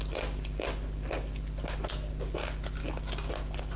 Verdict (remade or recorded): recorded